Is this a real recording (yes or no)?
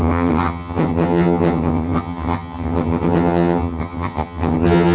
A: no